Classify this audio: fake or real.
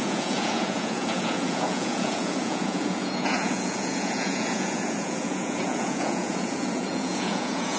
fake